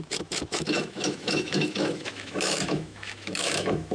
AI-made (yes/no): yes